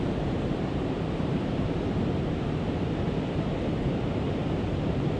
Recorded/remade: remade